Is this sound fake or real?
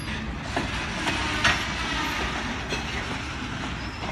real